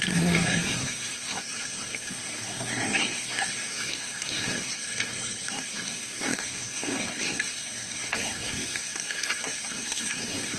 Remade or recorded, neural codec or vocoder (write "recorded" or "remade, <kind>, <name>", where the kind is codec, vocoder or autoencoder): remade, codec, SNAC